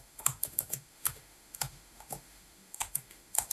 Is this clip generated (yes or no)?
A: yes